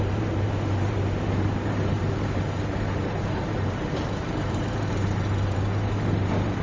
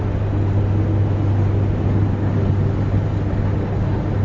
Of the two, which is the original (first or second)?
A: second